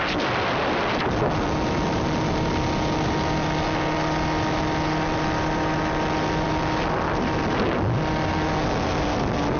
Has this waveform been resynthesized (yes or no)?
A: no